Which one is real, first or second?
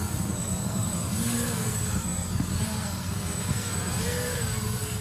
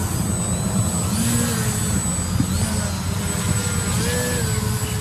second